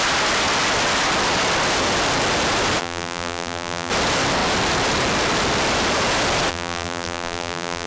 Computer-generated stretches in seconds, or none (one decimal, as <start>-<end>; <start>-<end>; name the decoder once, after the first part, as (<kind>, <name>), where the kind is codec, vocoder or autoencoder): 2.8-3.9 (vocoder, BigVGAN v2); 6.5-7.9